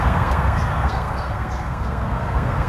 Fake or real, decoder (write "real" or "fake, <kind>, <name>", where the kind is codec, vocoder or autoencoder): fake, codec, SNAC